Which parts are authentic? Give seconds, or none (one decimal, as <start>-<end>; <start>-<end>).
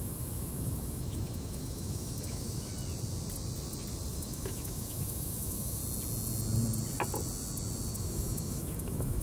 2.7-4.1; 5.8-7.9